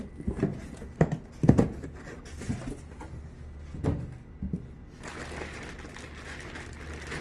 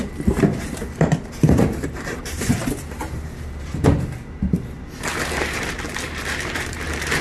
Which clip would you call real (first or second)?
first